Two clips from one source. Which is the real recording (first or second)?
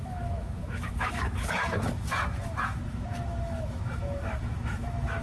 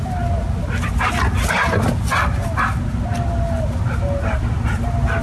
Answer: second